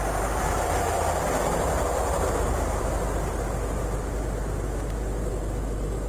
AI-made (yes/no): yes